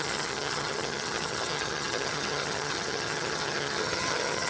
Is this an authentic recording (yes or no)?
no